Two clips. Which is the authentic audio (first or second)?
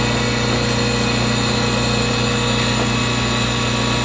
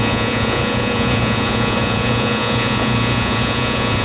first